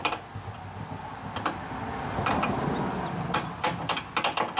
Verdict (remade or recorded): recorded